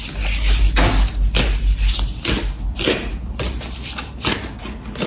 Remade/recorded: recorded